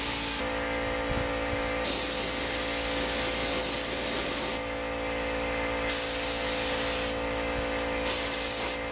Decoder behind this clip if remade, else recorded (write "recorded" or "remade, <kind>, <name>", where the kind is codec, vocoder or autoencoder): recorded